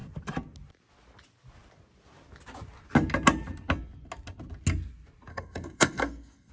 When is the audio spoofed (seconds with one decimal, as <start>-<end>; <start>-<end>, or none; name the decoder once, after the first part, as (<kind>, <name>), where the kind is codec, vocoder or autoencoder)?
5.3-6.5 (codec, SNAC)